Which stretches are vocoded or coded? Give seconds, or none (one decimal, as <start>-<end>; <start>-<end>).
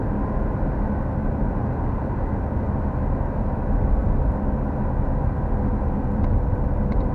none